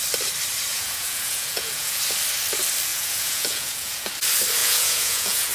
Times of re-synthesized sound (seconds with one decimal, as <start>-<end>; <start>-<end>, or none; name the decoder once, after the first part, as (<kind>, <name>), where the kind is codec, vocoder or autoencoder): 0.7-2.0 (vocoder, Vocos); 2.9-4.1; 4.6-5.5